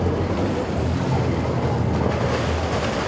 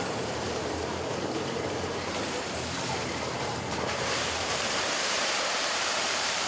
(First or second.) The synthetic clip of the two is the second